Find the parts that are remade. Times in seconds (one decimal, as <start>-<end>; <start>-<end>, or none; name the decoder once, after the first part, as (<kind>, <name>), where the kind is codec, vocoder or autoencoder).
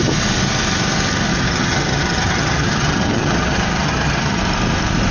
1.3-4.4 (vocoder, HiFi-GAN)